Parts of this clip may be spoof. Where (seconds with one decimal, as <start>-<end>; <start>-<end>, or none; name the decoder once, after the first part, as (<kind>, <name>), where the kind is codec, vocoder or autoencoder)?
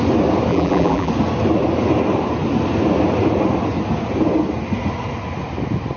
0.5-1.1 (vocoder, BigVGAN v2)